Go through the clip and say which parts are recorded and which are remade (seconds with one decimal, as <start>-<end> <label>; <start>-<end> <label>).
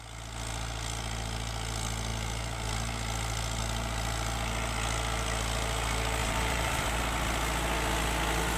0.0-6.2 recorded; 6.2-7.0 remade; 7.0-8.6 recorded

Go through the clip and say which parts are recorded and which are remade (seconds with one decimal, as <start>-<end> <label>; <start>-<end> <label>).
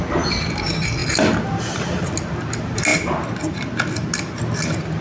0.0-5.0 recorded